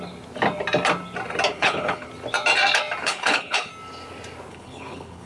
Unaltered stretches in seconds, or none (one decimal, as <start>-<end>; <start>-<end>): 0.0-1.5; 2.1-3.0; 3.7-4.5